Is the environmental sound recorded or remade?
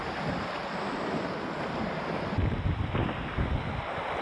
recorded